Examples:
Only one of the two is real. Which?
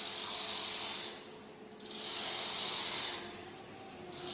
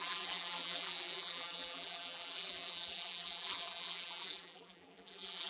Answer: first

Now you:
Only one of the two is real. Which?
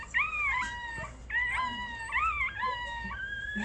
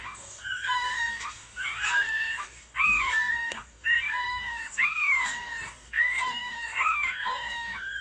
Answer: first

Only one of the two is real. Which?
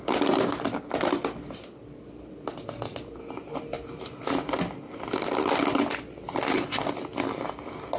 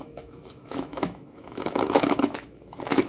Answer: first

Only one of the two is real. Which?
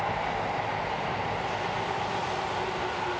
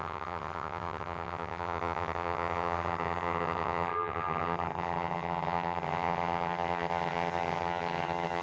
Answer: first